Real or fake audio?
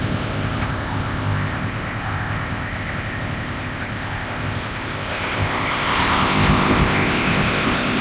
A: fake